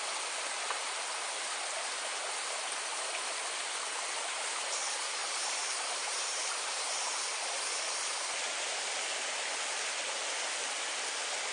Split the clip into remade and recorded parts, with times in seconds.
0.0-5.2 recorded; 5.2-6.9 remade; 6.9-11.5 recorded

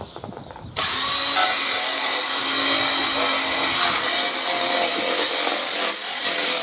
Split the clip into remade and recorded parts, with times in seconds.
0.0-1.4 recorded; 1.4-2.3 remade; 2.3-6.6 recorded

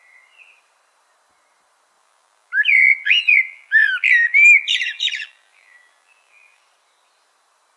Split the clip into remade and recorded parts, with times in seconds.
0.0-2.0 recorded; 2.0-6.6 remade; 6.6-7.8 recorded